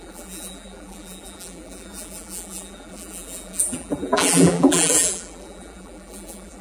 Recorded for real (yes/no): no